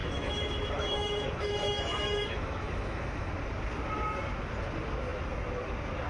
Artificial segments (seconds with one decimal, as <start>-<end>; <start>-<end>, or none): 0.0-3.3